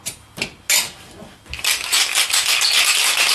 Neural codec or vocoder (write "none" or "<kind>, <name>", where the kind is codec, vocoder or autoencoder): none